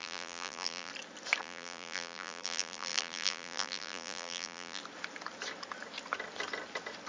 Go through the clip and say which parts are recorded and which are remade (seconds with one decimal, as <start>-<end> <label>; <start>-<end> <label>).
0.0-0.9 remade; 0.9-1.4 recorded; 1.4-4.8 remade; 4.8-7.1 recorded